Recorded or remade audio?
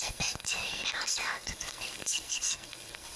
remade